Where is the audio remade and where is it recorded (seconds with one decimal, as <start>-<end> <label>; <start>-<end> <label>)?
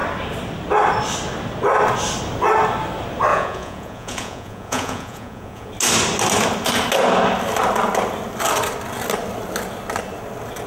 0.0-3.3 recorded; 3.3-5.7 remade; 5.7-10.7 recorded